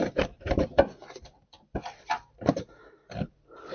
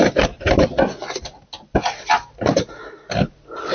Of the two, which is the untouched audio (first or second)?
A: second